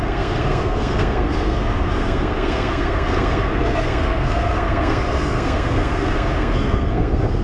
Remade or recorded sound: remade